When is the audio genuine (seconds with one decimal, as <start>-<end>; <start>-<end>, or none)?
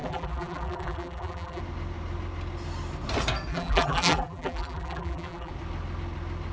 1.6-3.5; 5.5-6.5